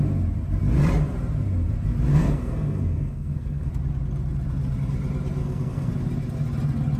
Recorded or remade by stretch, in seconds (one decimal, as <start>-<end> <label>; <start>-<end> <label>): 0.0-2.1 recorded; 2.1-3.7 remade; 3.7-5.4 recorded; 5.4-5.9 remade; 5.9-7.0 recorded